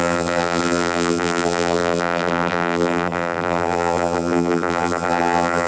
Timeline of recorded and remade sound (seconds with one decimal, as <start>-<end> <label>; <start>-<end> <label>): 0.0-5.7 remade